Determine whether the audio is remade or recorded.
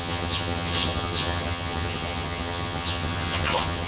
remade